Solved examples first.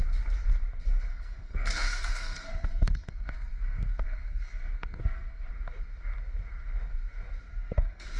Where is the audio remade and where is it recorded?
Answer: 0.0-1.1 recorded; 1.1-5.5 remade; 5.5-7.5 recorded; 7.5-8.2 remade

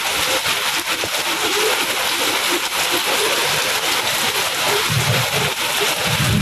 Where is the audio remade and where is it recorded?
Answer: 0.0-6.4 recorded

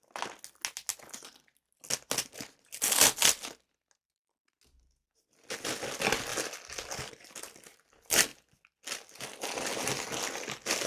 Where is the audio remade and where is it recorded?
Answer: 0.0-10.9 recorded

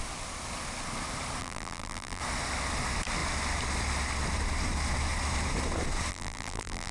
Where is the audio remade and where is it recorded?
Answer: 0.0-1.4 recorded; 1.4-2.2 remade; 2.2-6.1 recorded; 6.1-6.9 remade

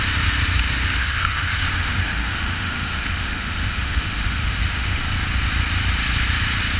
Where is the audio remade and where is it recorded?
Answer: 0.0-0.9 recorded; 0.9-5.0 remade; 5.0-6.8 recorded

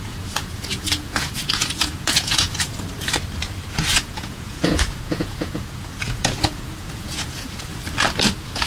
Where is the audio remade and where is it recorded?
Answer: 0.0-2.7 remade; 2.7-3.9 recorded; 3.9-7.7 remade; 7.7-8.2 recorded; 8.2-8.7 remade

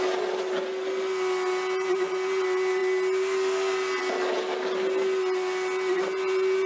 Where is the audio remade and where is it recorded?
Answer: 0.0-6.7 recorded

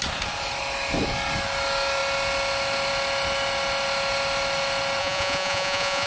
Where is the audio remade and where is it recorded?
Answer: 0.0-5.0 recorded; 5.0-6.1 remade